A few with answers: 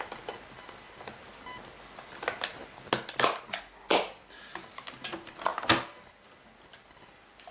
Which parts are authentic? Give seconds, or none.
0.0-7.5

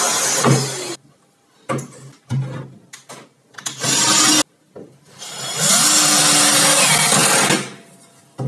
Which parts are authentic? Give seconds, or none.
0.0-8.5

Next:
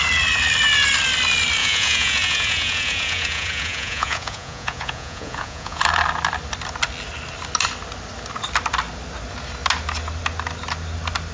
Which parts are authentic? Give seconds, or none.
0.0-1.6; 5.8-11.3

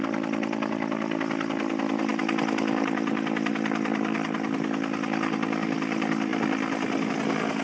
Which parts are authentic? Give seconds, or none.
0.0-7.6